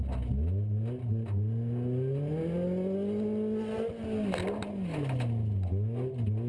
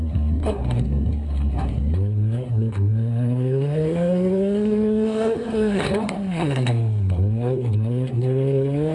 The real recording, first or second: first